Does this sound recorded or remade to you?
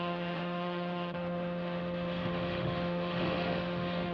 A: remade